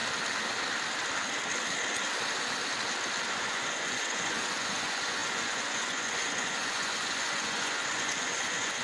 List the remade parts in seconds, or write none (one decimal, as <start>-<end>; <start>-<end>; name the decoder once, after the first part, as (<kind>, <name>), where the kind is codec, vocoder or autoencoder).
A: 3.3-8.8 (vocoder, Vocos)